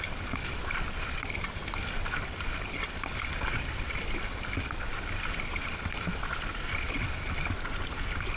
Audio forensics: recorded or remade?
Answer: recorded